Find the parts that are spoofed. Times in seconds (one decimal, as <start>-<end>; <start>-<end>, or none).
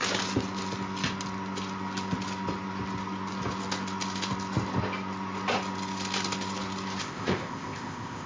7.0-8.3